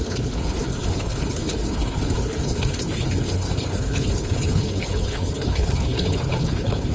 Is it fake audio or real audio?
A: fake